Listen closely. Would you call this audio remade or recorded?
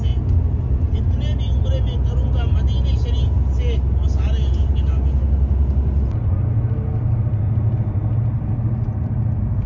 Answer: recorded